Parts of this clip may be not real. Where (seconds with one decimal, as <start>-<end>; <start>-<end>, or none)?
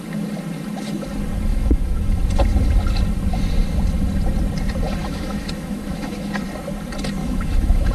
1.5-2.2; 5.0-6.3; 7.2-7.9